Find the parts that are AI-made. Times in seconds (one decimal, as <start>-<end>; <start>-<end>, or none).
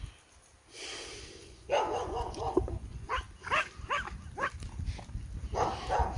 1.4-3.1